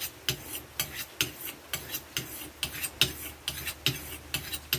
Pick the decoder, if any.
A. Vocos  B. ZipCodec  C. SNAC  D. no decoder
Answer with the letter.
D